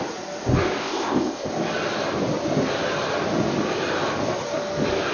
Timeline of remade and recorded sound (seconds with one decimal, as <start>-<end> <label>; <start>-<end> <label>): 0.0-0.8 recorded; 0.8-1.5 remade; 1.5-5.1 recorded